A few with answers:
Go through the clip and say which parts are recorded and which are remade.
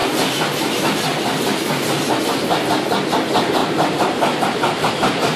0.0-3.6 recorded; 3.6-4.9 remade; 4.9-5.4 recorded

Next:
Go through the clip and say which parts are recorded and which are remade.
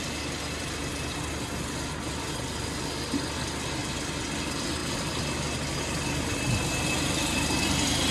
0.0-3.8 recorded; 3.8-4.3 remade; 4.3-8.1 recorded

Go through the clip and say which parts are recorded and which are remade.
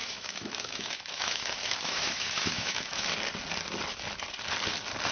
0.0-3.1 remade; 3.1-5.1 recorded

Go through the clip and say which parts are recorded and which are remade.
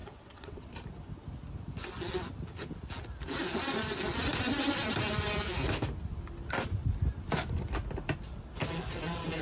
0.0-0.7 remade; 0.7-9.4 recorded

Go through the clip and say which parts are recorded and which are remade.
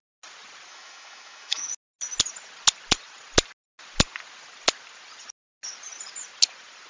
0.0-0.7 recorded; 0.7-1.7 remade; 1.7-6.9 recorded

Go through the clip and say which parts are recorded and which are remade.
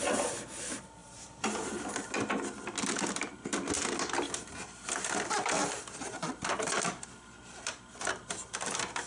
0.0-1.0 recorded; 1.0-1.7 remade; 1.7-9.1 recorded